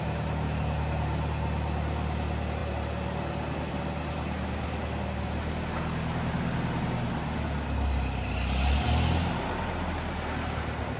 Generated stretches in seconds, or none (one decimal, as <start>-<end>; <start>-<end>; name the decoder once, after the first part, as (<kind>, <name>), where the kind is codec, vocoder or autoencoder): none